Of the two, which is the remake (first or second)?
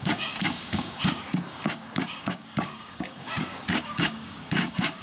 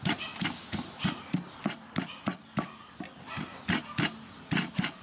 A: first